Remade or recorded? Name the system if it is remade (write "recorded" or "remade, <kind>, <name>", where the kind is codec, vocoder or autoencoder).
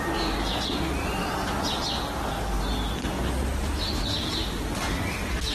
recorded